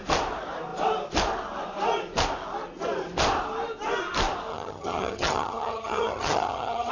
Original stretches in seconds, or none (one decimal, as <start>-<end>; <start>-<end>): 0.0-4.5